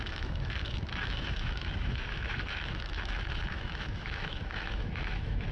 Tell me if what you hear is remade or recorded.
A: remade